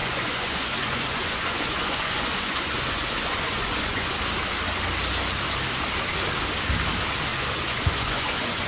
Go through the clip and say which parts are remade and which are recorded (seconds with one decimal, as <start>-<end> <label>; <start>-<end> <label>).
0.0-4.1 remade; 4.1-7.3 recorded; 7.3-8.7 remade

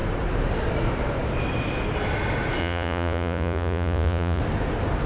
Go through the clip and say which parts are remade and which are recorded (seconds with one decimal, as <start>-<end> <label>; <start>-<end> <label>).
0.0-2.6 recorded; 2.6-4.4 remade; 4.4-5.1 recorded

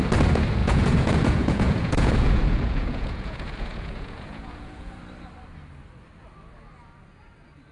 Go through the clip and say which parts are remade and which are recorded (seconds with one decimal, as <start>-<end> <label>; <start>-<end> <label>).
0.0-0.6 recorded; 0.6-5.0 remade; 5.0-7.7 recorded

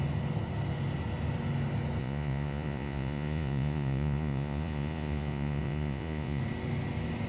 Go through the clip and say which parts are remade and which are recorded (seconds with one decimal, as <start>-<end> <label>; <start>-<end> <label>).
0.0-2.0 recorded; 2.0-6.4 remade; 6.4-7.3 recorded

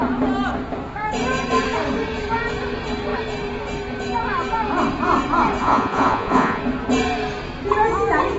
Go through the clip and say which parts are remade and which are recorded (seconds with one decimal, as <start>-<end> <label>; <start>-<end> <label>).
0.0-5.6 recorded; 5.6-6.6 remade; 6.6-8.4 recorded